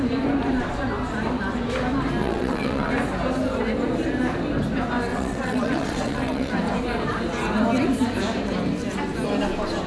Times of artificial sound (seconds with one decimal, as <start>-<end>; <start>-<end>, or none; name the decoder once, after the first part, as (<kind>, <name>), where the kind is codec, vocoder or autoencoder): 2.2-2.9 (vocoder, WaveNeXt); 5.1-6.5